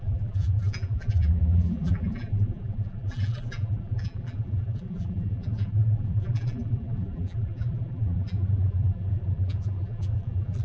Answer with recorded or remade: remade